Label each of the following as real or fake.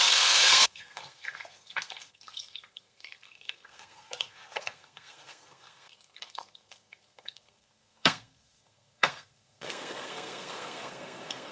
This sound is fake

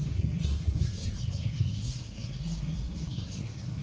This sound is fake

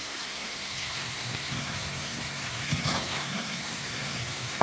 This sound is fake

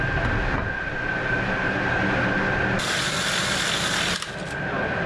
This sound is real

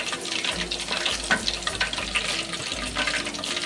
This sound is real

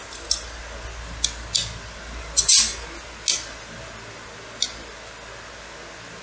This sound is real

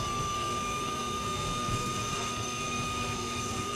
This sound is fake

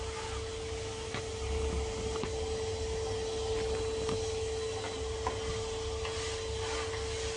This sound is real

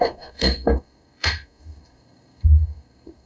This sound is fake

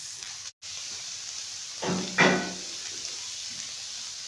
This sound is real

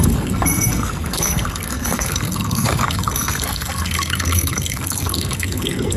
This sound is fake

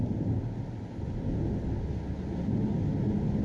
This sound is real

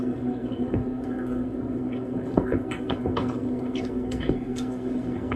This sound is fake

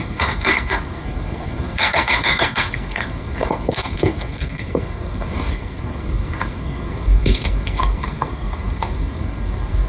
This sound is fake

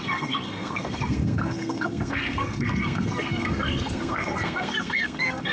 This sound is fake